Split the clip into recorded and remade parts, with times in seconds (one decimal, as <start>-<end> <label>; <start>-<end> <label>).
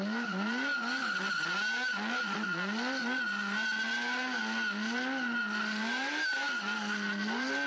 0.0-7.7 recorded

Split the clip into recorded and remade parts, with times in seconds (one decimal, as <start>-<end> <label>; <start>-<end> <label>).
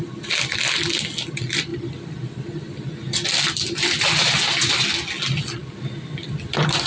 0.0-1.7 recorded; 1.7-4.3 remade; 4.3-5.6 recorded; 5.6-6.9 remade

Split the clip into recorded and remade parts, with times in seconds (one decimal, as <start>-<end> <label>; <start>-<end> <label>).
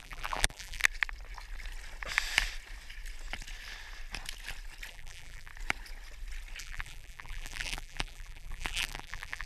0.0-0.8 remade; 0.8-4.9 recorded; 4.9-5.5 remade; 5.5-6.6 recorded; 6.6-9.5 remade